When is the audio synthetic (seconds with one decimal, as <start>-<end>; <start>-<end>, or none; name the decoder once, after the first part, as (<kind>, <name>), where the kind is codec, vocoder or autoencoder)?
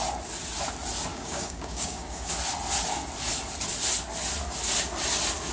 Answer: 1.1-2.3 (codec, DAC)